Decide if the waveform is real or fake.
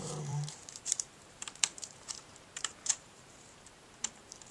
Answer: fake